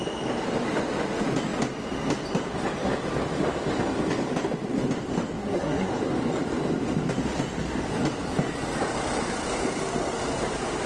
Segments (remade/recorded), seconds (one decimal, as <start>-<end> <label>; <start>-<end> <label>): 0.0-5.4 recorded; 5.4-5.9 remade; 5.9-10.9 recorded